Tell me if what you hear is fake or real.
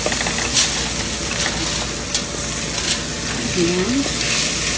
real